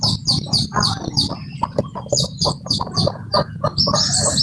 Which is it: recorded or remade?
remade